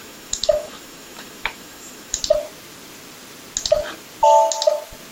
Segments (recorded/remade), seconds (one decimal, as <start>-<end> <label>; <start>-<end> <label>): 0.0-2.2 remade; 2.2-5.1 recorded